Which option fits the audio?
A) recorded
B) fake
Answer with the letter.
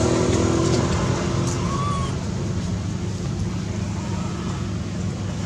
A